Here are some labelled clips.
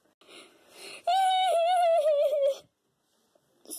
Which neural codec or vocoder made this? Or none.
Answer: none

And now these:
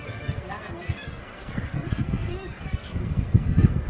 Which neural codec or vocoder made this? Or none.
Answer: codec, SNAC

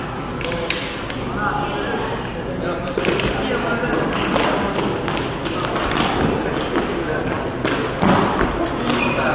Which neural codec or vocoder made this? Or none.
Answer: none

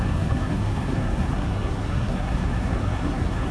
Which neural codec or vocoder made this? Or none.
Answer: codec, SNAC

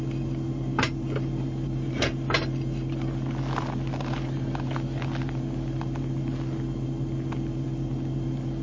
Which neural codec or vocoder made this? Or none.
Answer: none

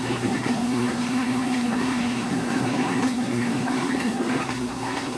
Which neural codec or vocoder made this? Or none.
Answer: codec, SNAC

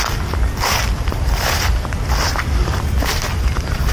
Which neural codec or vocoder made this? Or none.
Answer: none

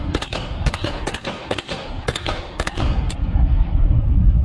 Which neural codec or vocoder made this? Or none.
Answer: codec, SNAC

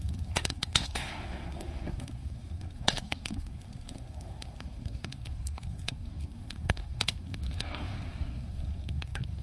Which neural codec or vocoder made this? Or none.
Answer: codec, SNAC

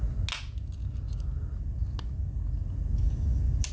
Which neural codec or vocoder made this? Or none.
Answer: none